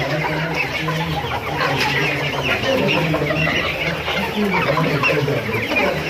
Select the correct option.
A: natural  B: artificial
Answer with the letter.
A